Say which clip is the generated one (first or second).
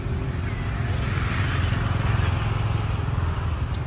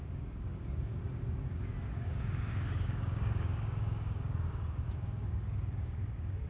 second